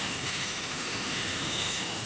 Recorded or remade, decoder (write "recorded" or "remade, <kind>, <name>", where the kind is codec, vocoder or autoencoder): remade, autoencoder, DAC-VAE